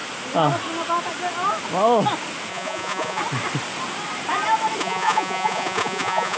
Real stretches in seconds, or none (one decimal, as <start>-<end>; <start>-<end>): 0.0-2.5; 3.2-4.8